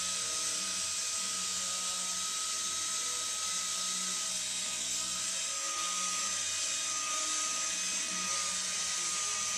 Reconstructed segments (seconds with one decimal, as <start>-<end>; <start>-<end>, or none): 4.3-5.2